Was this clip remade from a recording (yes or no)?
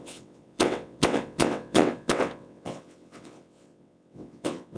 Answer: yes